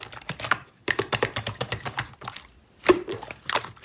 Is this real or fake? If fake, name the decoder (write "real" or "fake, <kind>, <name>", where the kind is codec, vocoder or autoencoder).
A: real